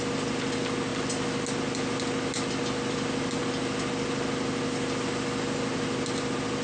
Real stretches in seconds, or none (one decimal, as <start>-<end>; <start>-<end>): 0.0-6.6